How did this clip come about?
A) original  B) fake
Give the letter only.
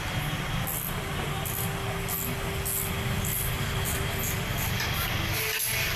A